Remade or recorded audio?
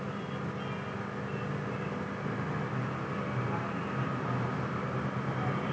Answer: recorded